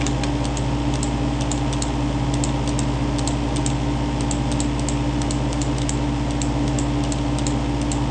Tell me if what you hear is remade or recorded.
recorded